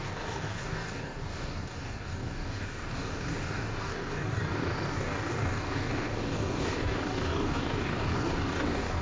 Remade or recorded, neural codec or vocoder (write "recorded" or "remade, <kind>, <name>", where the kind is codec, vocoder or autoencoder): remade, codec, DAC